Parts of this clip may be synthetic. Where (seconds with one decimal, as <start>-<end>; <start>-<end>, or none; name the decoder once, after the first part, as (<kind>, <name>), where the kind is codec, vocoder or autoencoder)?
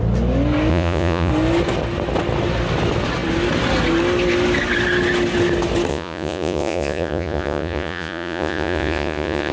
0.7-1.3 (vocoder, Vocos); 5.9-9.5